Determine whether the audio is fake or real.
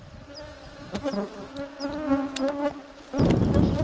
real